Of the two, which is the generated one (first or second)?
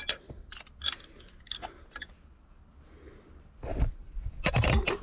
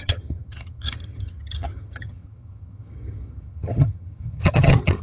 second